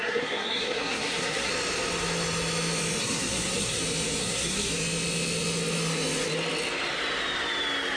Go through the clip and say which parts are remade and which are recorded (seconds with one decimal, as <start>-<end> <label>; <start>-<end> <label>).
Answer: 0.0-1.5 remade; 1.5-3.0 recorded; 3.0-3.8 remade; 3.8-4.2 recorded; 4.2-4.7 remade; 4.7-8.0 recorded